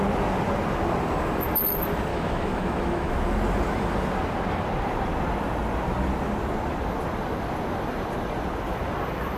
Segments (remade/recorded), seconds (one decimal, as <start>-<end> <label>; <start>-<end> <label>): 0.0-2.1 recorded; 2.1-3.1 remade; 3.1-9.4 recorded